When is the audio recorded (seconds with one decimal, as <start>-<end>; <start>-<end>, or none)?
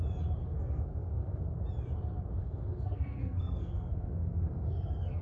0.0-0.4; 1.4-2.4